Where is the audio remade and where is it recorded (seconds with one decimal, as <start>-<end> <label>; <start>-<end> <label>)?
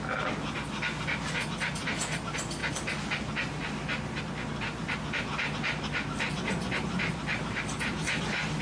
0.0-8.6 recorded